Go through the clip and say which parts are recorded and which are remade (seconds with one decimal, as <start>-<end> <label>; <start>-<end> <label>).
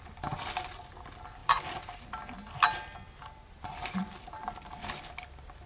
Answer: 0.0-5.7 recorded